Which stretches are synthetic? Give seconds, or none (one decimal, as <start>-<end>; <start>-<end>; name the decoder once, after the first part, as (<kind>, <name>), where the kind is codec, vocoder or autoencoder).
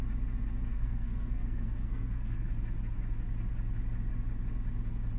0.7-2.5 (codec, SNAC)